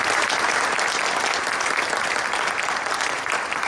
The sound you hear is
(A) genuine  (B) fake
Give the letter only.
A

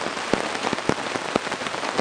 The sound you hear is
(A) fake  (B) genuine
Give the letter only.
B